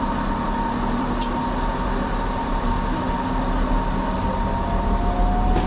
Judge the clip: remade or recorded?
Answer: recorded